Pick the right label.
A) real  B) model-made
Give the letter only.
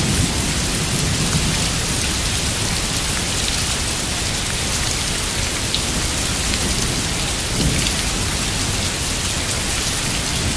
A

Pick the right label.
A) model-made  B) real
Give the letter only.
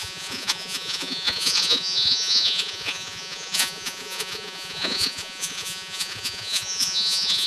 A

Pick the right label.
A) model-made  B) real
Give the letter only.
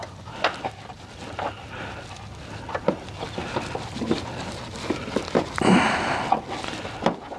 B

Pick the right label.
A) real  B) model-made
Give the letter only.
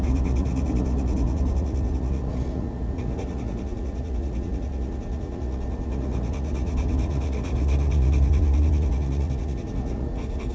B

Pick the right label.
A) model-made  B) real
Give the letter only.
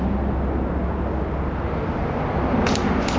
B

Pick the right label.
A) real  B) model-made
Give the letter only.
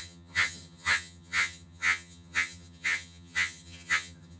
B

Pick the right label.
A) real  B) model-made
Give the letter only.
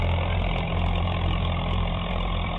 B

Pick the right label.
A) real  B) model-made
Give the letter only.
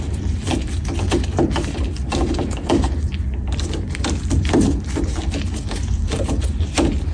A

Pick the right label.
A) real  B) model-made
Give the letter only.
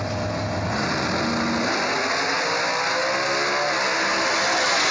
A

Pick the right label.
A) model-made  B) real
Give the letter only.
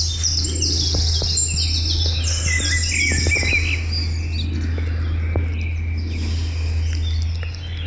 B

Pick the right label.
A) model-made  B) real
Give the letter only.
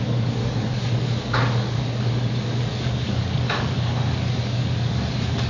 A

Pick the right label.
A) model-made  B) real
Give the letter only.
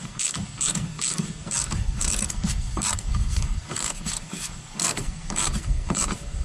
A